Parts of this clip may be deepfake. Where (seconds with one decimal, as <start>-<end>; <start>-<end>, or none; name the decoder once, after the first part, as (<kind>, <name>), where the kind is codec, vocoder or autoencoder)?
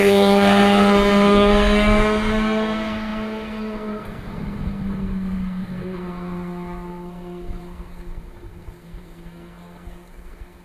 0.0-10.6 (codec, SNAC)